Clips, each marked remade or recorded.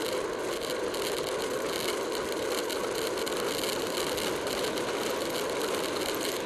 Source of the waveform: recorded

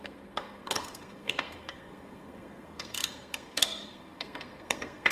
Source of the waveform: remade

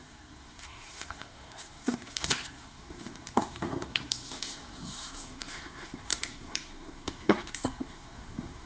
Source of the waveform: remade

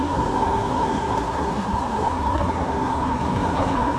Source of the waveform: remade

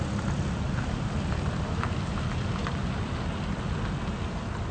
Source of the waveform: recorded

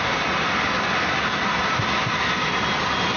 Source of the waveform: recorded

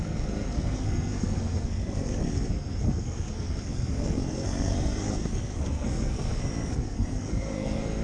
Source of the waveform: remade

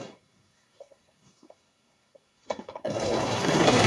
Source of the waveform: remade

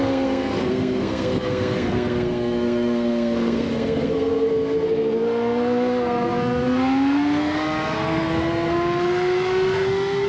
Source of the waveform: remade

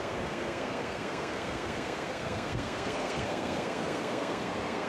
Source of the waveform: remade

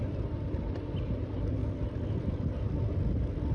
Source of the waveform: recorded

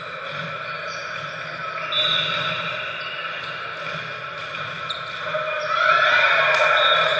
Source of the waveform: recorded